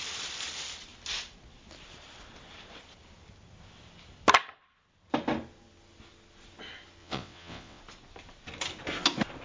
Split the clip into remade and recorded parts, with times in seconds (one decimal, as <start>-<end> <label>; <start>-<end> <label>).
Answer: 0.0-7.0 recorded; 7.0-7.8 remade; 7.8-9.4 recorded